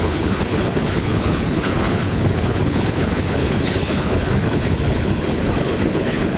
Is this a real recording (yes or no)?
no